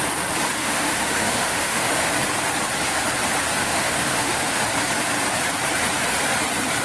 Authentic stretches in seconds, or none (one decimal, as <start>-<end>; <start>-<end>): 0.0-0.6; 2.1-3.6; 4.6-6.8